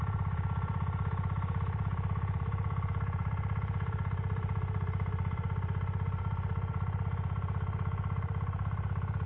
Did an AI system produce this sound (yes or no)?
yes